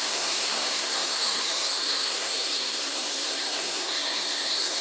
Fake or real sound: fake